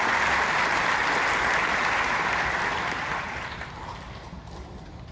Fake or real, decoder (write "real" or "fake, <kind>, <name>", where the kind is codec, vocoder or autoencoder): fake, vocoder, BigVGAN v2